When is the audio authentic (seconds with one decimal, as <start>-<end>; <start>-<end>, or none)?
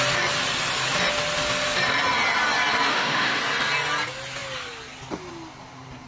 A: 0.0-2.9; 3.4-6.1